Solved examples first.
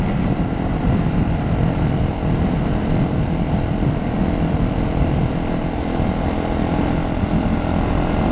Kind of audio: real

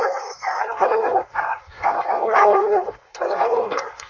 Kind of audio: fake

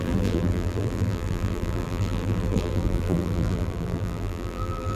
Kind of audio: fake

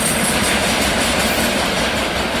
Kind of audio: real